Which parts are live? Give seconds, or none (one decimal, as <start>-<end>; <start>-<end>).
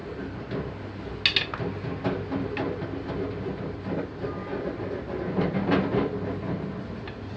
0.0-7.4